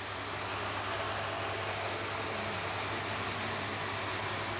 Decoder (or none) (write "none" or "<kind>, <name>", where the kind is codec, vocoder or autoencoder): none